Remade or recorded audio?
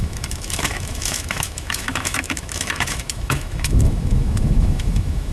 remade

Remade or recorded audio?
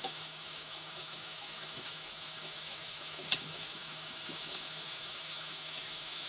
remade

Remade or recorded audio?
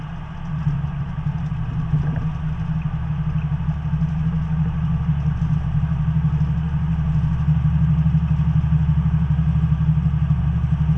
recorded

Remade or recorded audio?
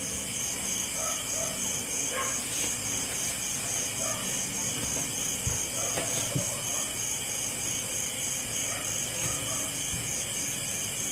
recorded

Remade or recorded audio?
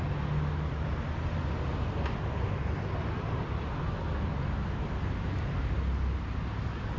recorded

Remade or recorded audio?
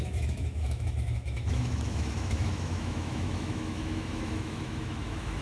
remade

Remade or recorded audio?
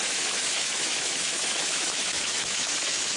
remade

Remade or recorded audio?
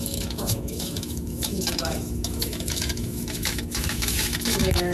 remade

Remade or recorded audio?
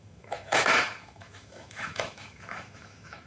remade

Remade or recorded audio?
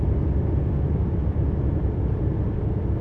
recorded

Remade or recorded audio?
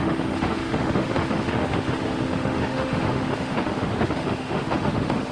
remade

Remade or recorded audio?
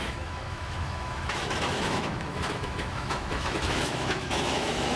remade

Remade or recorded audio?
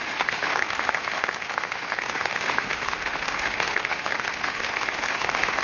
remade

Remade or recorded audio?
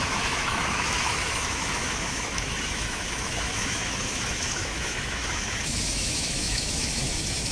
remade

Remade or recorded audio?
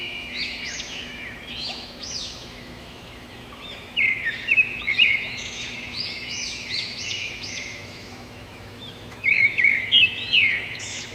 remade